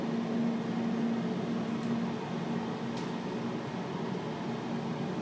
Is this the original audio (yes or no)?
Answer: yes